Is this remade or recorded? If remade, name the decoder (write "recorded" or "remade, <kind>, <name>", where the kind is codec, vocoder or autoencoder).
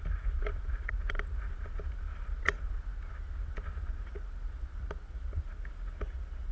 recorded